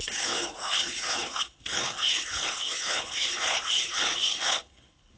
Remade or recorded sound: remade